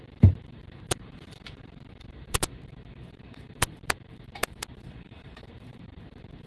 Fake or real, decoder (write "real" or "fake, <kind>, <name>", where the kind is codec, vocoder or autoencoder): fake, vocoder, BigVGAN v2